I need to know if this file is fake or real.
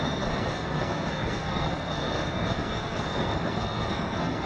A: fake